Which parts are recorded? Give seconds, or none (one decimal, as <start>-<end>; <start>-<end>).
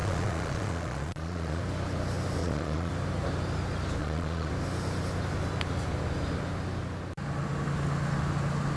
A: 1.6-2.4; 2.9-4.0; 4.5-8.8